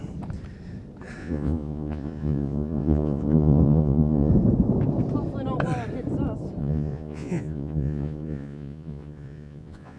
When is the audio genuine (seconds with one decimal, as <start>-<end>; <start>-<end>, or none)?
0.0-1.2; 4.3-6.6